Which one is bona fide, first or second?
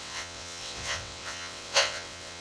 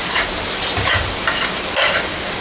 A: second